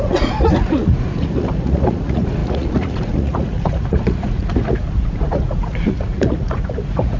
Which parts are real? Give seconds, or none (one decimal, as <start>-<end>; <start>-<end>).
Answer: none